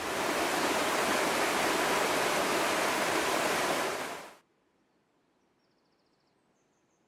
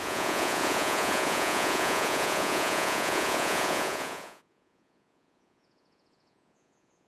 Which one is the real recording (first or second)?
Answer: first